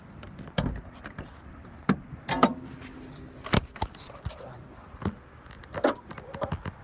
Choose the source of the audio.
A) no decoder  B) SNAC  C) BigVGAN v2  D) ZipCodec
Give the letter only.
A